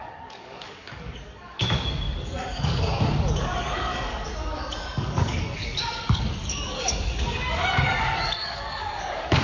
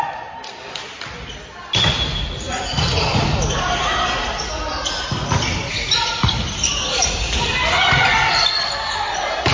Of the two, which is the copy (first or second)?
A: first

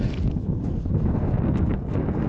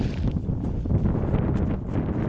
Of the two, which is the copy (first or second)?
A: first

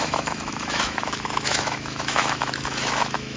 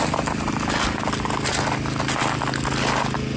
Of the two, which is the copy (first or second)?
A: first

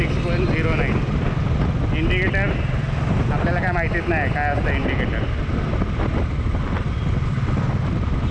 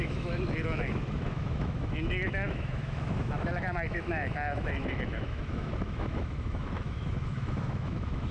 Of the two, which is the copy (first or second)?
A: second